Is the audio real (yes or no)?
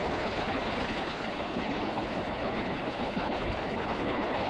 no